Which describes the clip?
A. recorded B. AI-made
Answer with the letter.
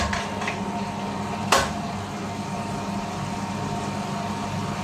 A